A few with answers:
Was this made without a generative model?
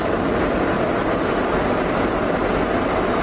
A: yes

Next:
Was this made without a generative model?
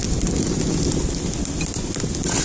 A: yes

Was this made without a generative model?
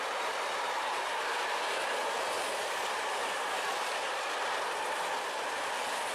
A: no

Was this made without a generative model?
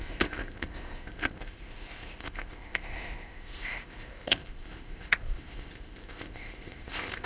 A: no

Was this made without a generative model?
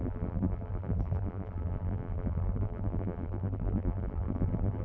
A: no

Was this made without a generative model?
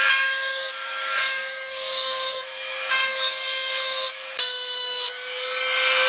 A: no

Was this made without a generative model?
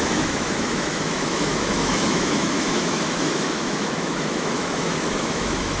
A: no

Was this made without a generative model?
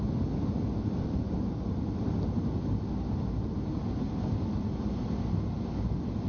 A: yes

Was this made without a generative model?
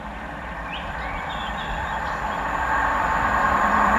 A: no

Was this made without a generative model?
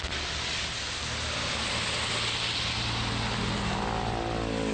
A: yes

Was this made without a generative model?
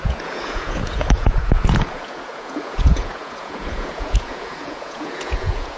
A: no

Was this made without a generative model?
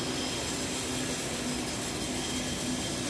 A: yes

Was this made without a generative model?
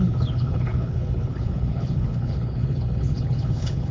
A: no